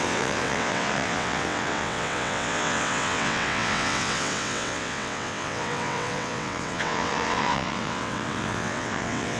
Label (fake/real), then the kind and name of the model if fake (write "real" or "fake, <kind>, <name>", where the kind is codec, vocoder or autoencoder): fake, vocoder, WaveNeXt